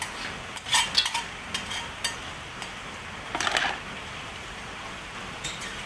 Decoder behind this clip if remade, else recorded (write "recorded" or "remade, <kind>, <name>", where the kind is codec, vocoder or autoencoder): recorded